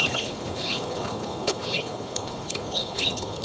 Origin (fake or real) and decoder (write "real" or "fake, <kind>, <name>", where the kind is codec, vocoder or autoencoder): fake, codec, HILCodec